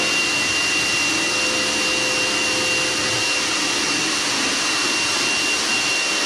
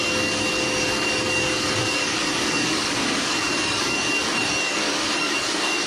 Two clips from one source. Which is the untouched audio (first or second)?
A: first